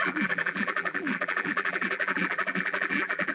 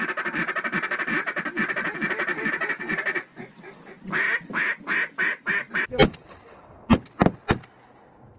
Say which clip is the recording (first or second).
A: second